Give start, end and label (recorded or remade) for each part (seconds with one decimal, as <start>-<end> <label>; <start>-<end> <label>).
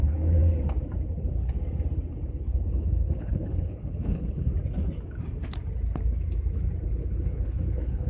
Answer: 0.0-0.4 remade; 0.4-2.3 recorded; 2.3-4.5 remade; 4.5-6.9 recorded; 6.9-8.1 remade